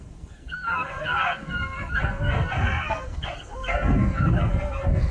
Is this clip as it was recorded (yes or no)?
no